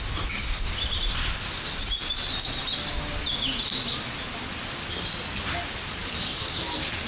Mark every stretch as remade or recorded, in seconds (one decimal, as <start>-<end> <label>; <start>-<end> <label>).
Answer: 0.0-6.0 recorded; 6.0-6.6 remade; 6.6-7.1 recorded